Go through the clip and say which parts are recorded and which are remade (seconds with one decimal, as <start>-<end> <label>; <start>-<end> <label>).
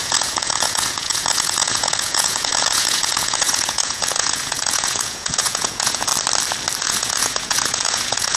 0.0-6.1 remade; 6.1-6.8 recorded; 6.8-8.4 remade